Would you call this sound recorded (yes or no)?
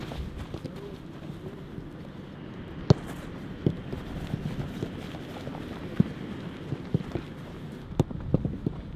yes